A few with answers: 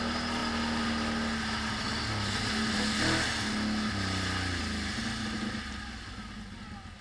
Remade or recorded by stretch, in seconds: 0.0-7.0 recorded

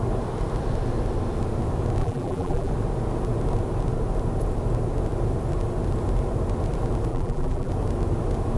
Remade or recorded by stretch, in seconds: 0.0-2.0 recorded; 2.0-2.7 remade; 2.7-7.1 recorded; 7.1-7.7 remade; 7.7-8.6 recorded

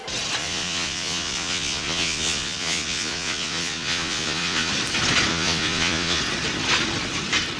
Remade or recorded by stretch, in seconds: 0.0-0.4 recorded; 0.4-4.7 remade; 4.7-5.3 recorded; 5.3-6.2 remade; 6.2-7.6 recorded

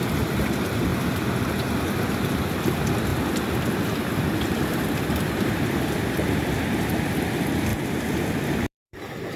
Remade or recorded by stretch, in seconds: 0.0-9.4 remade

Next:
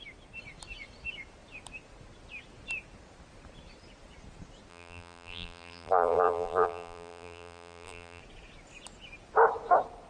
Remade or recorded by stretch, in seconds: 0.0-4.7 recorded; 4.7-8.2 remade; 8.2-10.1 recorded

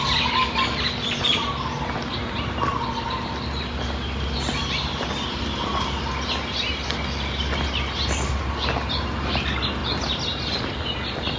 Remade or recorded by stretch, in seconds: 0.0-11.4 recorded

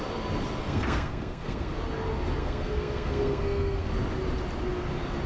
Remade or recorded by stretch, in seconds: 0.0-0.6 recorded; 0.6-1.7 remade; 1.7-2.4 recorded; 2.4-3.9 remade; 3.9-5.3 recorded